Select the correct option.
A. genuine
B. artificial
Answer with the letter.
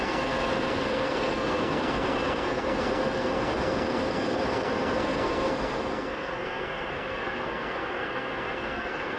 B